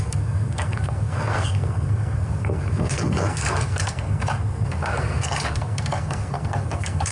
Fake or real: fake